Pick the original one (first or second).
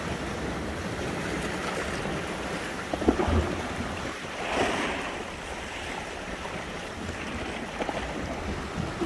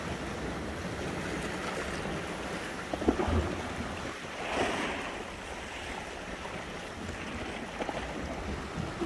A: second